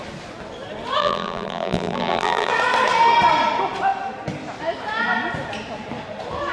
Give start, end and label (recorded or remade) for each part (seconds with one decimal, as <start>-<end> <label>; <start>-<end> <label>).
0.0-1.0 recorded; 1.0-2.5 remade; 2.5-6.5 recorded